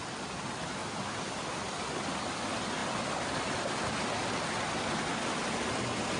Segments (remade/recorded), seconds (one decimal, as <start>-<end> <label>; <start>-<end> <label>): 0.0-6.2 recorded